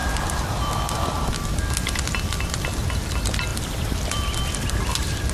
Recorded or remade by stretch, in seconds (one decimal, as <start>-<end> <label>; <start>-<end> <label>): 0.0-2.1 remade; 2.1-3.5 recorded; 3.5-5.3 remade